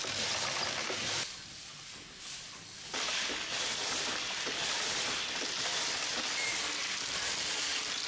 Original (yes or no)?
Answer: yes